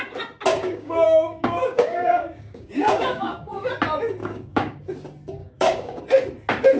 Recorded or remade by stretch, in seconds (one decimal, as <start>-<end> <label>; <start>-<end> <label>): 0.0-0.5 recorded; 0.5-3.7 remade; 3.7-4.2 recorded; 4.2-4.8 remade; 4.8-5.4 recorded; 5.4-6.0 remade; 6.0-6.8 recorded